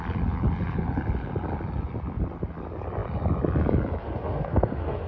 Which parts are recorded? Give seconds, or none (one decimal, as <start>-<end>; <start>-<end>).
0.0-4.0